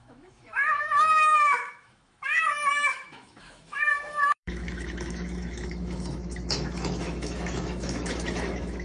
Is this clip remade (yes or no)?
yes